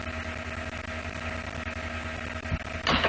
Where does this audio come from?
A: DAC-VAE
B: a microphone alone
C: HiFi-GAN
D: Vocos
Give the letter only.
B